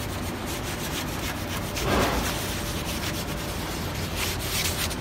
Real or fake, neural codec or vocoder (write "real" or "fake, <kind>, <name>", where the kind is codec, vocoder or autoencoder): real